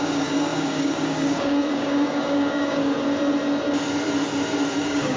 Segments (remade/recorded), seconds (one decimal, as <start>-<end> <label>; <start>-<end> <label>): 0.0-2.9 remade; 2.9-4.8 recorded; 4.8-5.2 remade